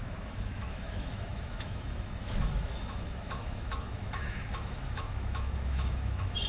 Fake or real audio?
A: fake